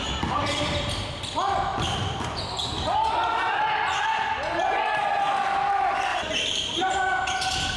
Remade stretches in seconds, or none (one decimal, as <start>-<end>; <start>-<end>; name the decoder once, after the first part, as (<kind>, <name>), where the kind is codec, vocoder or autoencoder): 0.4-1.1 (vocoder, BigVGAN v2); 1.7-2.4; 6.1-6.9